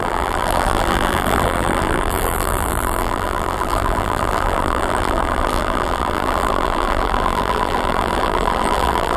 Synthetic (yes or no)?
yes